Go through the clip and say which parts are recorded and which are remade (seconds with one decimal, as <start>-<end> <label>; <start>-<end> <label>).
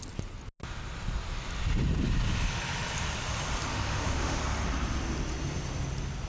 0.0-3.7 recorded; 3.7-4.4 remade; 4.4-6.3 recorded